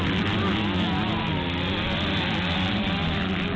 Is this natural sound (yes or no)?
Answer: yes